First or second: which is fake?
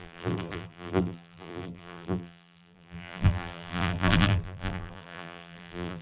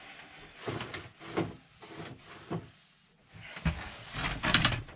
first